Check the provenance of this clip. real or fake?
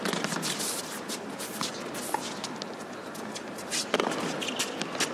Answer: real